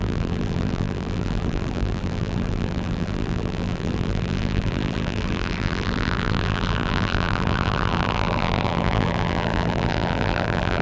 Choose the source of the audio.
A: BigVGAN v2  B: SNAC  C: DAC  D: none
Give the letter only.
A